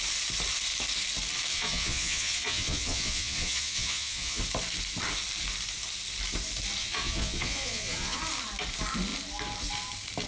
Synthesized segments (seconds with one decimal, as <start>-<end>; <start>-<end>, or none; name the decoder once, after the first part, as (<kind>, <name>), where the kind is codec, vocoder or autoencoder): 1.5-4.4 (vocoder, Vocos); 6.8-8.2